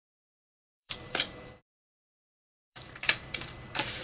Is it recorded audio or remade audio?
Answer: remade